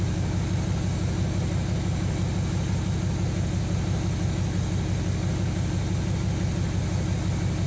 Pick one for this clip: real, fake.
real